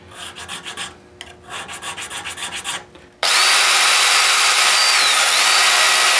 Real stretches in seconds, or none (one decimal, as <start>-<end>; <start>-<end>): 0.0-6.2